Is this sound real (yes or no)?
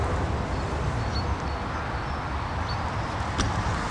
yes